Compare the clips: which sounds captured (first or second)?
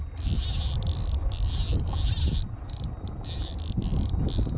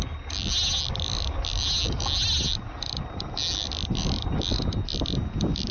second